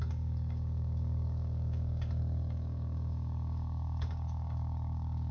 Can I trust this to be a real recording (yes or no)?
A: no